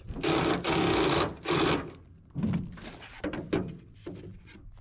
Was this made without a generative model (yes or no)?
yes